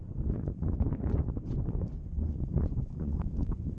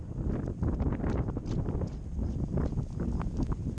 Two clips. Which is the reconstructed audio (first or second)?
first